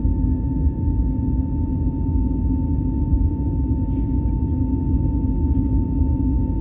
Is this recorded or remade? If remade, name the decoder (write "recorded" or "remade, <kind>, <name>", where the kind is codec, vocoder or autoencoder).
recorded